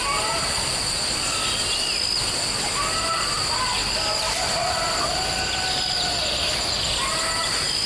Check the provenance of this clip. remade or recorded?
recorded